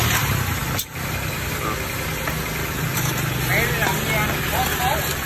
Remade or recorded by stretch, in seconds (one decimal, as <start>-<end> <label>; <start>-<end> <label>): 0.0-2.9 recorded; 2.9-3.5 remade; 3.5-5.2 recorded